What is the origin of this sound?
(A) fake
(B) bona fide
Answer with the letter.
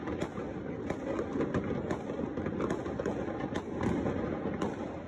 B